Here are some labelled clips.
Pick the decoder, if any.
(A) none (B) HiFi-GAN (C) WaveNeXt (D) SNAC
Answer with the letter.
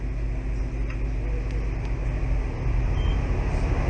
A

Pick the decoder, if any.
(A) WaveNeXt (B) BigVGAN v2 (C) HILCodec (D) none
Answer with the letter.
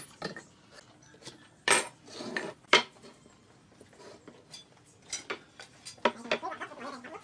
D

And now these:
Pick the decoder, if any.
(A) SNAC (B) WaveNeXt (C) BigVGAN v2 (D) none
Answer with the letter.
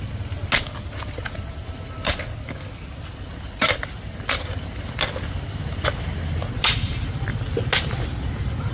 D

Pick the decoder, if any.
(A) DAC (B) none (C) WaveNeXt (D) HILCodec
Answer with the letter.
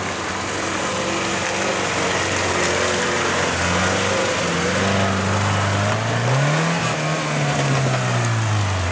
B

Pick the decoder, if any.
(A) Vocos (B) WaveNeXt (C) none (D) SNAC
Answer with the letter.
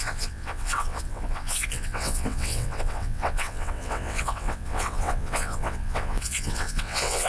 B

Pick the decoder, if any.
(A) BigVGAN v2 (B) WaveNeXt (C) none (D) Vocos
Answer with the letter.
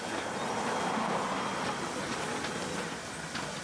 C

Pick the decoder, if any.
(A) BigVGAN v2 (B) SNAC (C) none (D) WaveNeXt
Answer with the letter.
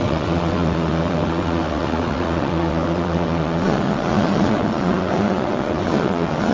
D